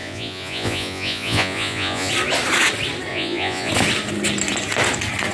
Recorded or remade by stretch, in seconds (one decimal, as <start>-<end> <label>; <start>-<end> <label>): 0.0-2.1 remade; 2.1-3.1 recorded; 3.1-3.7 remade; 3.7-5.3 recorded

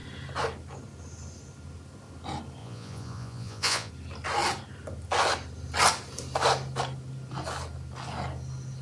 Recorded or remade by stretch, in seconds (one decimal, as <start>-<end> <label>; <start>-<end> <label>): 0.0-2.6 recorded; 2.6-3.9 remade; 3.9-8.8 recorded

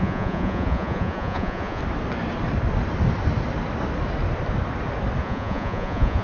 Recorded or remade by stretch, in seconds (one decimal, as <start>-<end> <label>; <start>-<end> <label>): 0.0-1.8 remade; 1.8-5.2 recorded; 5.2-6.2 remade

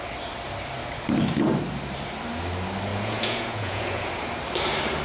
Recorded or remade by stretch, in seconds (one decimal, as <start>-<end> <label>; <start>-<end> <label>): 0.0-2.9 recorded; 2.9-4.1 remade; 4.1-5.0 recorded